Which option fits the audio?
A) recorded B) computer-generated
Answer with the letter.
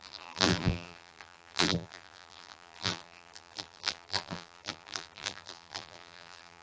B